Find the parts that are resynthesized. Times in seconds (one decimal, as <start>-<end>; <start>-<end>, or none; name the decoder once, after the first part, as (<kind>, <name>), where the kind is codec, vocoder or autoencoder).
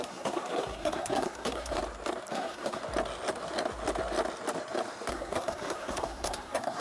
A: 0.0-1.8 (codec, SNAC); 2.3-2.8; 5.1-6.8